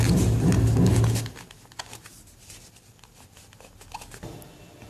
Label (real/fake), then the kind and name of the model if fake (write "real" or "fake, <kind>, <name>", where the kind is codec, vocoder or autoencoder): real